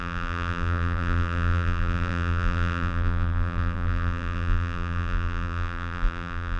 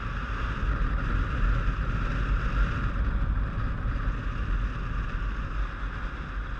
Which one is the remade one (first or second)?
first